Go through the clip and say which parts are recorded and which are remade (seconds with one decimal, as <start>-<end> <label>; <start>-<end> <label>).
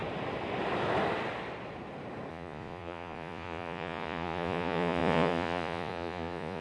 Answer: 0.0-2.3 recorded; 2.3-6.6 remade